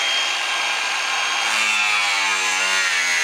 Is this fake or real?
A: real